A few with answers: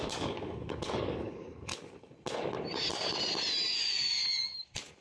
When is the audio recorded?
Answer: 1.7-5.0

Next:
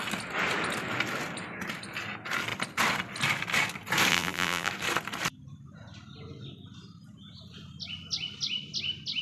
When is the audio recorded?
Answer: 0.0-4.1; 4.7-9.2

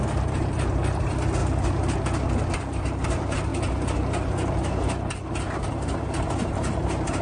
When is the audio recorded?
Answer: 1.4-2.4; 3.5-5.6

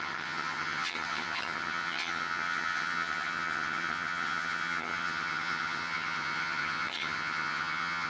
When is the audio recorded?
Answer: none

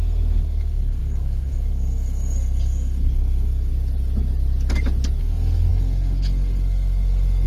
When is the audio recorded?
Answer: 3.7-5.2

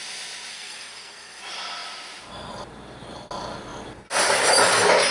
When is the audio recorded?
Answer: 0.0-0.5; 1.4-5.1

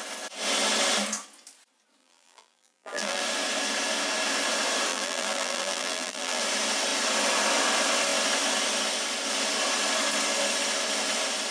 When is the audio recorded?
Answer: 0.0-2.0; 3.2-4.9; 6.4-11.5